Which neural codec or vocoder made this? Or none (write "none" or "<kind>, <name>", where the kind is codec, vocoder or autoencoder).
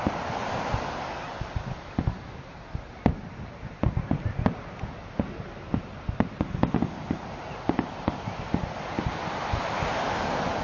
none